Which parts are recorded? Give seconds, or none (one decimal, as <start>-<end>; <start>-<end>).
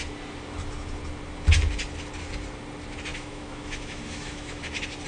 0.0-3.1; 4.6-5.1